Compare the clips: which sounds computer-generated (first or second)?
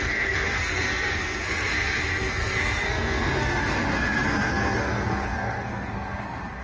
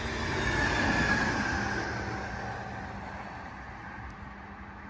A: first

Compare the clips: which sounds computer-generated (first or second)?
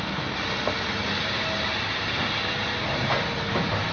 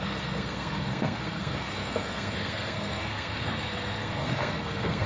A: second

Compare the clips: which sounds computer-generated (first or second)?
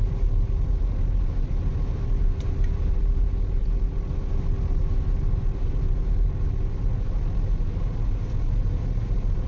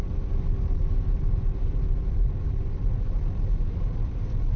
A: second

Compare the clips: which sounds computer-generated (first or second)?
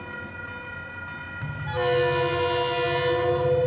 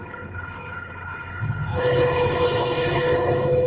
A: second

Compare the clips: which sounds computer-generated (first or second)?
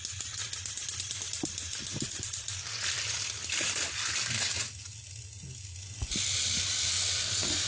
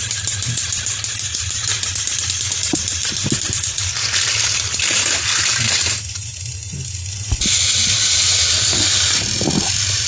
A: second